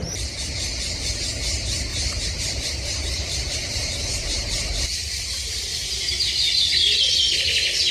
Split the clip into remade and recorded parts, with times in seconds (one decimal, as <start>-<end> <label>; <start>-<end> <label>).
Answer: 0.0-1.9 recorded; 1.9-6.1 remade; 6.1-6.8 recorded; 6.8-7.4 remade; 7.4-7.9 recorded